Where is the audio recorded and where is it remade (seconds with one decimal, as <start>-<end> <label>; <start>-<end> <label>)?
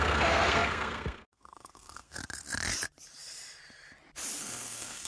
0.0-2.2 remade; 2.2-4.4 recorded; 4.4-5.1 remade